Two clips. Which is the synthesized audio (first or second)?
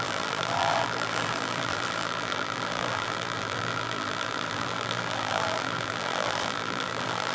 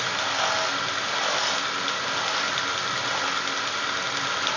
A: first